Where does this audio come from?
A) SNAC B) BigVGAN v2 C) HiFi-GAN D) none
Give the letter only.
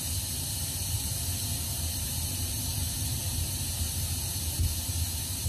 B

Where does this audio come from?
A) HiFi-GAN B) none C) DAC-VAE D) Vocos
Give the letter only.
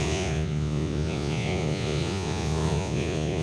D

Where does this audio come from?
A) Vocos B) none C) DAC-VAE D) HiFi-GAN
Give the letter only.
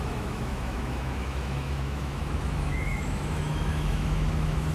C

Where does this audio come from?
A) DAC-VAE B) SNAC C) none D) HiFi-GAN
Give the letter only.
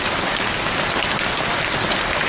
C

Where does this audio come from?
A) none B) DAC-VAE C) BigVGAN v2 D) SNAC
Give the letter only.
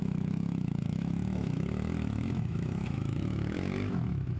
B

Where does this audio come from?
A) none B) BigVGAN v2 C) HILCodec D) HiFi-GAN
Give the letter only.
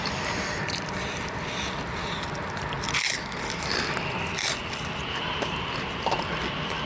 B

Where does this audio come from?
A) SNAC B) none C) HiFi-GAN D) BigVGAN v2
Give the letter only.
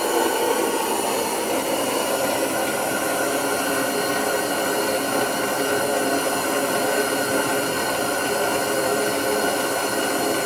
B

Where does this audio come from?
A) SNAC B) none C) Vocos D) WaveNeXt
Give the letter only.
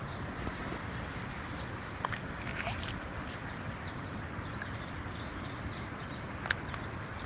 B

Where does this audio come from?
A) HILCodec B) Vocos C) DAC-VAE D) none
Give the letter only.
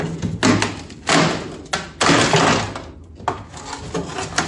D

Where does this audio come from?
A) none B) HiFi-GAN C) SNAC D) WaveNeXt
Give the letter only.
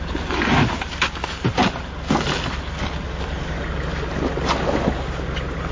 A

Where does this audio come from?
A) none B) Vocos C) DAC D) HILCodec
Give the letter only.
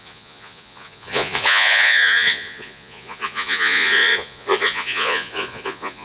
B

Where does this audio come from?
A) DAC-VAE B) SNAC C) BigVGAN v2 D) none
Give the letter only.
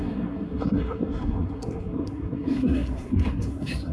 B